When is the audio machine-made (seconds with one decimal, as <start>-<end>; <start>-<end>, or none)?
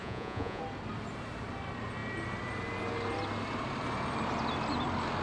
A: 0.0-0.6